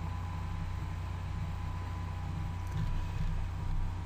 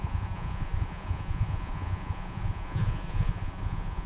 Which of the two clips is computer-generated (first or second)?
second